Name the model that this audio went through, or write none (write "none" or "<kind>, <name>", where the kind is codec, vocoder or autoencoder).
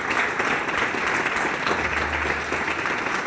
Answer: none